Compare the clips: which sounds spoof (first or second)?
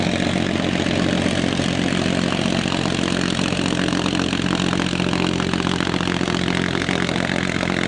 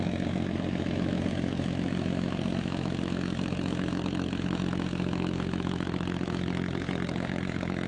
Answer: second